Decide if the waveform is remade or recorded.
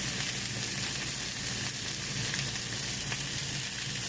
recorded